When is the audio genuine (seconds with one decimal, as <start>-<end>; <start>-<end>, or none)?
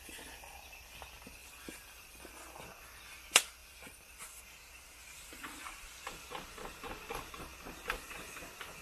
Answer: 0.0-1.4; 2.3-3.6; 4.4-5.0; 5.6-8.8